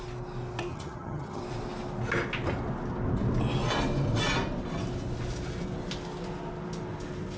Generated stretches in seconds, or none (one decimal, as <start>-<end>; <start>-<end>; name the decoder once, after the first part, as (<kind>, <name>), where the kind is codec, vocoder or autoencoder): 0.7-1.4 (vocoder, HiFi-GAN)